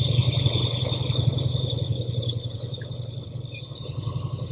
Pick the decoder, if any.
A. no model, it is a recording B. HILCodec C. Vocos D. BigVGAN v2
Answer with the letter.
D